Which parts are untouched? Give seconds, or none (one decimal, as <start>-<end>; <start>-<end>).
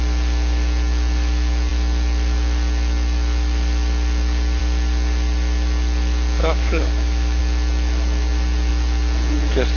0.0-6.4; 7.4-9.8